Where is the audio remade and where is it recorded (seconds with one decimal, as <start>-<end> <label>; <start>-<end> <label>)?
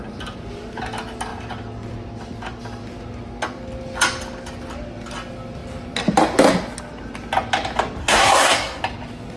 0.0-8.0 recorded; 8.0-8.8 remade; 8.8-9.4 recorded